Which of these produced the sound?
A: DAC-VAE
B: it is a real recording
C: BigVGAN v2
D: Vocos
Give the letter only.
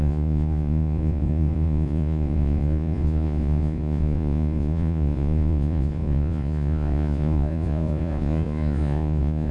D